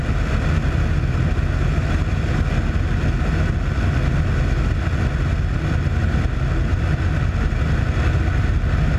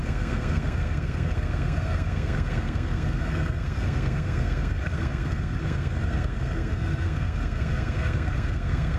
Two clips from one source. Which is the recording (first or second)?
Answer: first